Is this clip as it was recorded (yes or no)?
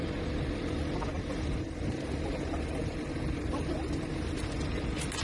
yes